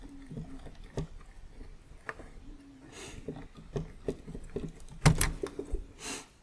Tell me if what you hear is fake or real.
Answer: real